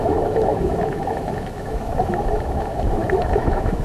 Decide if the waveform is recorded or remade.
remade